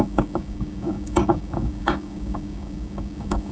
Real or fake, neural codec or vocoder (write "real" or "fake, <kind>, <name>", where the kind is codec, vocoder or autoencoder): fake, codec, DAC